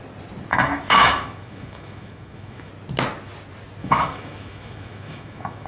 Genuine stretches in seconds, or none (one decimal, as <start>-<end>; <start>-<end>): 0.0-0.5; 2.7-3.8